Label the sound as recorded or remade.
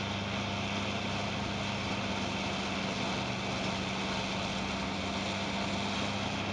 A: recorded